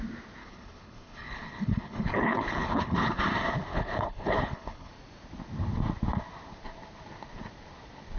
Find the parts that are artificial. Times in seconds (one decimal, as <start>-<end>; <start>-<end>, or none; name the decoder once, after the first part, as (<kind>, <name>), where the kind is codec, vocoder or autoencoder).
0.4-3.2 (codec, HILCodec); 3.7-4.9